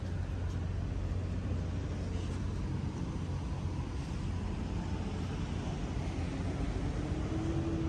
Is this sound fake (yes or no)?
no